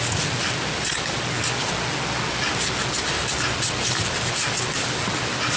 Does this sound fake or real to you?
real